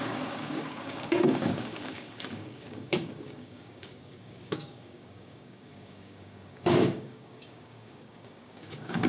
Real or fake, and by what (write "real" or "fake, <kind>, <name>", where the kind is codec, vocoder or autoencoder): fake, codec, DAC